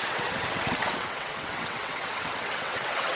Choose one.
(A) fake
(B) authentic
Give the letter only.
A